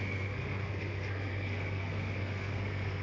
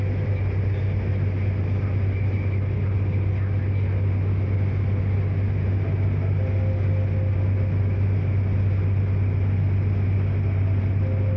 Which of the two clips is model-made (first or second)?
first